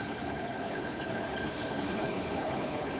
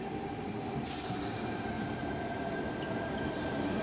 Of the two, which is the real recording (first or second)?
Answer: second